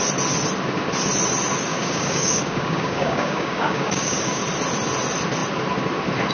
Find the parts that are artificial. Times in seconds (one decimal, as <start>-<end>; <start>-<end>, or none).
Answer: 1.7-4.4